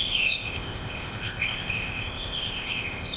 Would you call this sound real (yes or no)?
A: no